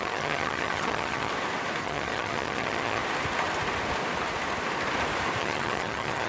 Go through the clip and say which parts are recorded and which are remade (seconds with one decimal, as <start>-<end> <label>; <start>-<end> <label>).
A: 0.0-1.3 remade; 1.3-1.8 recorded; 1.8-3.0 remade; 3.0-5.4 recorded; 5.4-6.3 remade